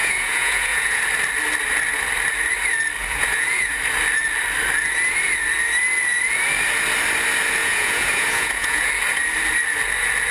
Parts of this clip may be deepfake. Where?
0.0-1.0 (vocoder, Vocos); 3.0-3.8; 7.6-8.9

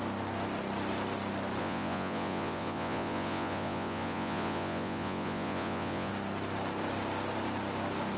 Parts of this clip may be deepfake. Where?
1.6-6.1 (vocoder, Vocos)

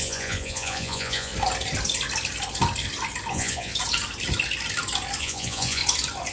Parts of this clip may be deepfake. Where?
0.0-1.3 (vocoder, Vocos); 3.3-3.7; 5.2-5.8

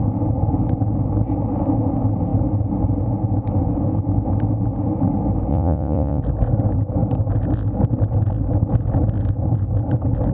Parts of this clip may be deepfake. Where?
5.5-6.2 (vocoder, Vocos)

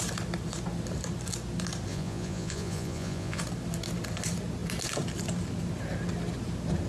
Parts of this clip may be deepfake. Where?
1.9-3.4 (vocoder, Vocos)